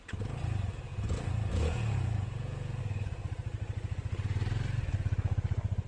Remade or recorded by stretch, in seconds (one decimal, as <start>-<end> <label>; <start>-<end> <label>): 0.0-0.9 recorded; 0.9-2.8 remade; 2.8-5.9 recorded